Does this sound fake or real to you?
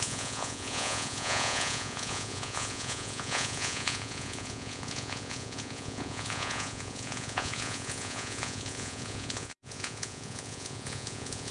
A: fake